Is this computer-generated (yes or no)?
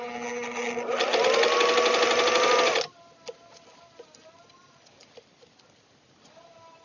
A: no